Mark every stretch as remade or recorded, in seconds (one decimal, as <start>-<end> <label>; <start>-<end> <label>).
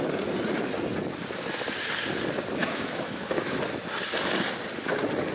0.0-2.6 recorded; 2.6-3.6 remade; 3.6-5.3 recorded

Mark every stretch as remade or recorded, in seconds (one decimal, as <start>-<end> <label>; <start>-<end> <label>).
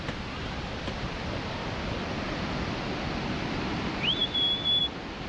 0.0-5.3 recorded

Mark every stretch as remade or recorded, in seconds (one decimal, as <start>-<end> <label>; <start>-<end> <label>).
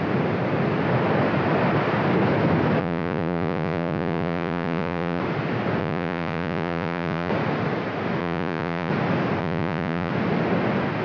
0.0-2.8 recorded; 2.8-5.2 remade; 5.2-5.8 recorded; 5.8-7.3 remade; 7.3-8.2 recorded; 8.2-8.9 remade; 8.9-9.4 recorded; 9.4-10.1 remade; 10.1-11.0 recorded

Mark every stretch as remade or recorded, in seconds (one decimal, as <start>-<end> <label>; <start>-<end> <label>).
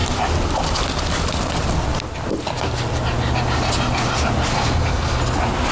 0.0-4.5 recorded; 4.5-5.2 remade; 5.2-5.7 recorded